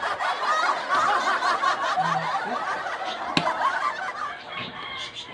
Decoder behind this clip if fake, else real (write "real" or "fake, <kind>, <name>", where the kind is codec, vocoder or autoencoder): real